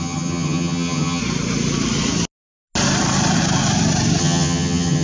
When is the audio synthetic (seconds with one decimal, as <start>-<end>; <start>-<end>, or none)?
0.0-1.2; 4.2-5.0